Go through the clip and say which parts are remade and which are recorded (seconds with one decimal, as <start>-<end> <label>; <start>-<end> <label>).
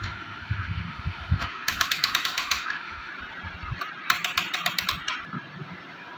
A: 0.0-3.1 remade; 3.1-6.2 recorded